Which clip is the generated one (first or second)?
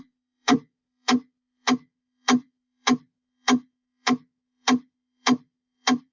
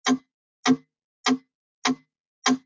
first